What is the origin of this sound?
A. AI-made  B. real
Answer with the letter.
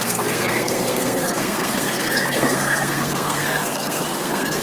A